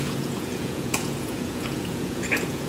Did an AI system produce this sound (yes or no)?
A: yes